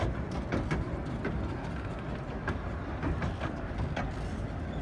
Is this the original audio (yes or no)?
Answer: yes